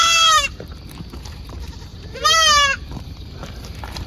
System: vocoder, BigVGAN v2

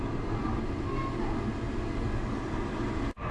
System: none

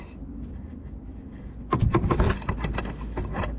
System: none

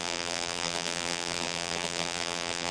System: vocoder, BigVGAN v2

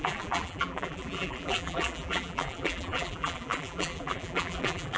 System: vocoder, BigVGAN v2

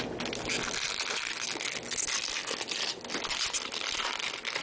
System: none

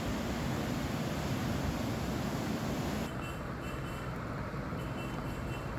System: none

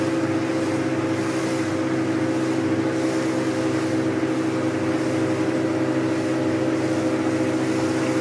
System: none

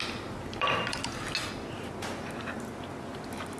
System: none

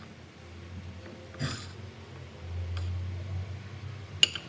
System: none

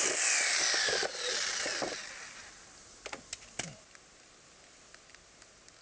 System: none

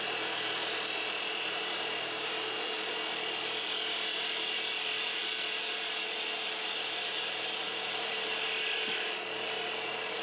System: vocoder, BigVGAN v2